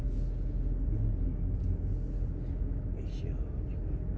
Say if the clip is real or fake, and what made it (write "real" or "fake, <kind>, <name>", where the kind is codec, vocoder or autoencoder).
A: real